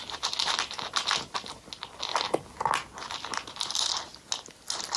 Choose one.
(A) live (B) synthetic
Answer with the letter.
A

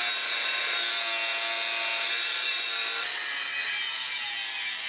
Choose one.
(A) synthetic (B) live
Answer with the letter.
B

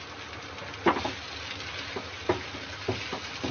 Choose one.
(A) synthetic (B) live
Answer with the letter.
B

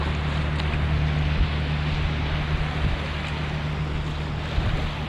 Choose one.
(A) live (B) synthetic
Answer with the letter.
A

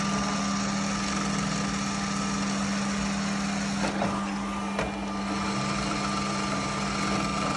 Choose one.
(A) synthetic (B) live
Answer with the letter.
B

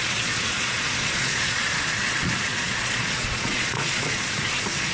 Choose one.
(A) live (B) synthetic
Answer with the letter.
B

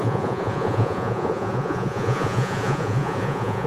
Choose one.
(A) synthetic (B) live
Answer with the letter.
A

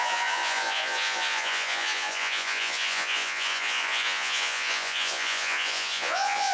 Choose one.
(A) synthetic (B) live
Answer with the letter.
A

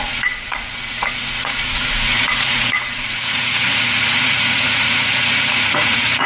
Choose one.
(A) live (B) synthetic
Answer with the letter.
B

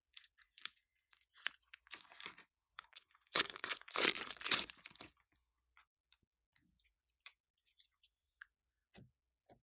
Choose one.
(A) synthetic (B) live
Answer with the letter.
A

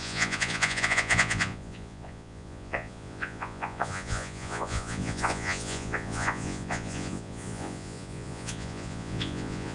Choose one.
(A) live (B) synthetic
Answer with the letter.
B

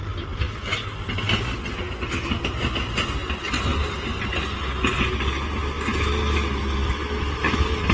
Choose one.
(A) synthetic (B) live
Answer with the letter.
B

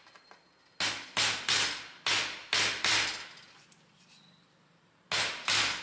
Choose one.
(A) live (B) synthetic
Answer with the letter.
A